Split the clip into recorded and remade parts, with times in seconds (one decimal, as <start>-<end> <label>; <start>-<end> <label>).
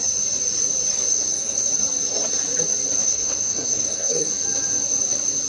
0.0-1.1 recorded; 1.1-1.7 remade; 1.7-3.0 recorded; 3.0-4.3 remade; 4.3-5.5 recorded